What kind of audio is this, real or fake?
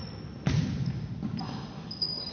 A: real